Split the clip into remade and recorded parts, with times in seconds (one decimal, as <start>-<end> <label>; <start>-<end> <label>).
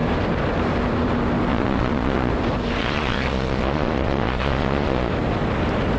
0.0-1.5 recorded; 1.5-2.3 remade; 2.3-2.8 recorded; 2.8-5.1 remade; 5.1-6.0 recorded